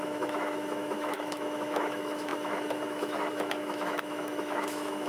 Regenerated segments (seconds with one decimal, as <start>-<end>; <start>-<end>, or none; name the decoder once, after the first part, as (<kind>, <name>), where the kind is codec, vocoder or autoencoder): 0.0-5.1 (autoencoder, DAC-VAE)